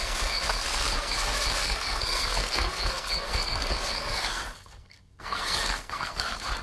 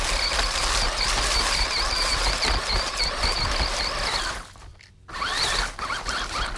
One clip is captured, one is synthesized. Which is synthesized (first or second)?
first